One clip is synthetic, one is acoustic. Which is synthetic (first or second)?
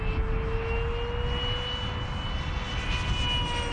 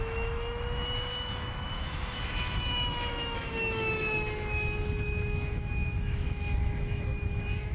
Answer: second